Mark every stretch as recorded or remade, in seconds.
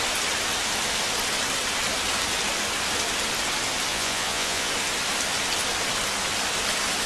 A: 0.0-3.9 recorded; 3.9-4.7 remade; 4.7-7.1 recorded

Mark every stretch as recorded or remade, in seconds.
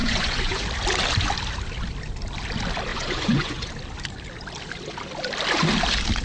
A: 0.0-0.6 remade; 0.6-2.9 recorded; 2.9-3.7 remade; 3.7-6.2 recorded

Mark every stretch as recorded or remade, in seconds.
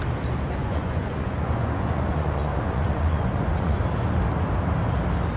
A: 0.0-0.6 recorded; 0.6-3.8 remade; 3.8-5.4 recorded